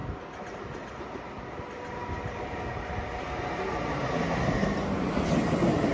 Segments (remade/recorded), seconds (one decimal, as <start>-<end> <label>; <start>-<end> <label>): 0.0-5.9 recorded